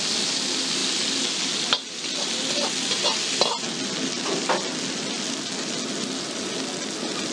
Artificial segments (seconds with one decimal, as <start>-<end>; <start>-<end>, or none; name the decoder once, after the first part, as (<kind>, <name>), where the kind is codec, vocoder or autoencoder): none